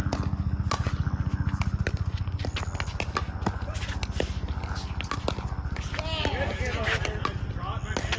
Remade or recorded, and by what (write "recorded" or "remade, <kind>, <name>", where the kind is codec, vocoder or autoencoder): recorded